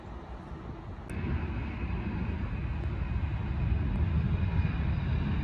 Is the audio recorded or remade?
recorded